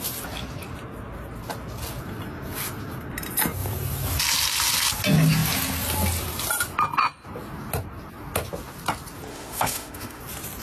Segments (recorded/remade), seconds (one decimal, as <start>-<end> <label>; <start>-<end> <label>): 0.0-9.3 recorded; 9.3-10.2 remade; 10.2-10.6 recorded